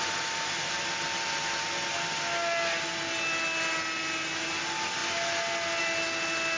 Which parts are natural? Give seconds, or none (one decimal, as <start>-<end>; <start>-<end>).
0.0-6.6

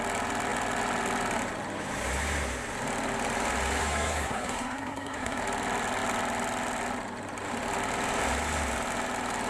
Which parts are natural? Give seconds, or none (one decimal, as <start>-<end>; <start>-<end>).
0.0-3.8; 5.4-9.5